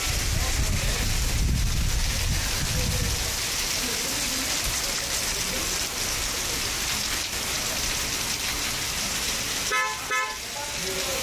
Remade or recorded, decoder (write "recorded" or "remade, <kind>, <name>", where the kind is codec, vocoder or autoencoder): recorded